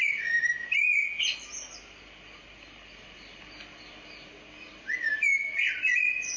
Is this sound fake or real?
real